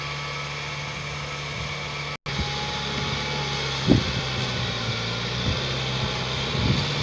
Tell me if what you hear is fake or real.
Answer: real